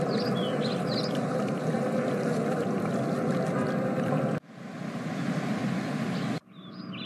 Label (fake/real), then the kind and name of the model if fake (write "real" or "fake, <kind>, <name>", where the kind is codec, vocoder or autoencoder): real